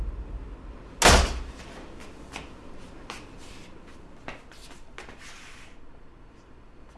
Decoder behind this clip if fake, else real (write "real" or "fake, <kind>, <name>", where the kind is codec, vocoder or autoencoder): real